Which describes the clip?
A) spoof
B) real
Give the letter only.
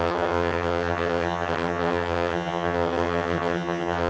A